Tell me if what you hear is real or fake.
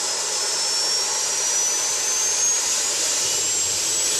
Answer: real